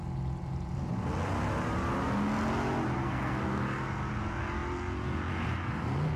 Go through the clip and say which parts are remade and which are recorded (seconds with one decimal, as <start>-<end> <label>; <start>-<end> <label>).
0.0-3.0 recorded; 3.0-3.6 remade; 3.6-6.2 recorded